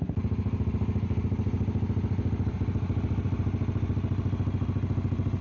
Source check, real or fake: real